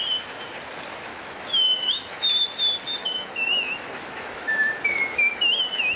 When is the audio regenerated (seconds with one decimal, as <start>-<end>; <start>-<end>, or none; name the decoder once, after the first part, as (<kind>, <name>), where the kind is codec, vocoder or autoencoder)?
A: 1.1-2.2 (autoencoder, DAC-VAE); 3.0-6.0